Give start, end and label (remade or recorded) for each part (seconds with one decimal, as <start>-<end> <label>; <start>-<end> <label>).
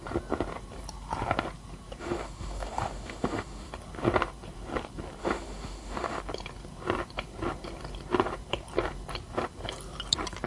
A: 0.0-2.0 recorded; 2.0-3.7 remade; 3.7-5.2 recorded; 5.2-6.2 remade; 6.2-10.5 recorded